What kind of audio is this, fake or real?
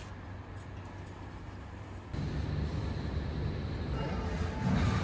real